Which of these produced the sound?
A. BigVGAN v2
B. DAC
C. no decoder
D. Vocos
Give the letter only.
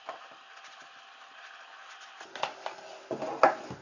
C